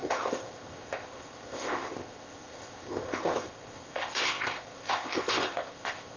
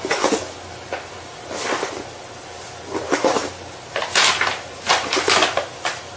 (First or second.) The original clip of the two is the second